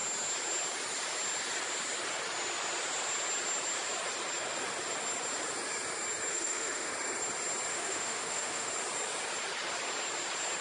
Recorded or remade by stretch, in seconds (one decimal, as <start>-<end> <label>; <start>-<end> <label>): 0.0-6.3 recorded; 6.3-6.9 remade; 6.9-7.7 recorded; 7.7-8.7 remade; 8.7-10.6 recorded